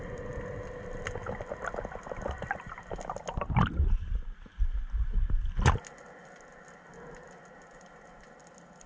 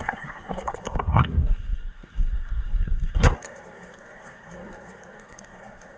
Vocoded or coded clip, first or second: second